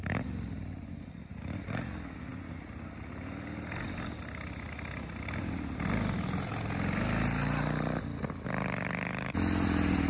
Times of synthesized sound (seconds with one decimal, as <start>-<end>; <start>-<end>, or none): none